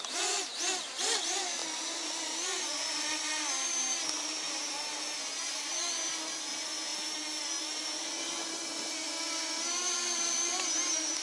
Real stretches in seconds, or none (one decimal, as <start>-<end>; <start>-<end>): 0.0-11.2